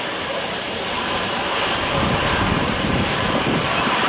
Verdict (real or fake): fake